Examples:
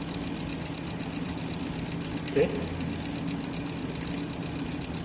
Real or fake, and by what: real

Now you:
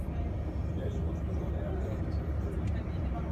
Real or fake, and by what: real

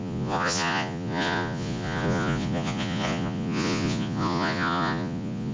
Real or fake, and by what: fake, vocoder, Vocos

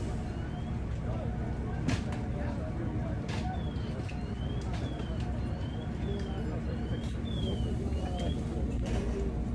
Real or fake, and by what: real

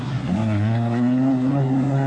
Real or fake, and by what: fake, codec, SNAC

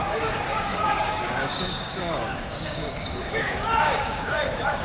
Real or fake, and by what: fake, codec, DAC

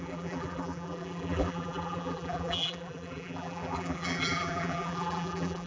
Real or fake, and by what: fake, vocoder, BigVGAN v2